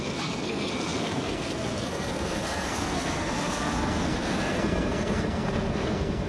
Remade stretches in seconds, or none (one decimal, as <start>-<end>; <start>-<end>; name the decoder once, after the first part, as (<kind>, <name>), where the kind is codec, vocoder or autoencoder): 0.0-6.3 (codec, SNAC)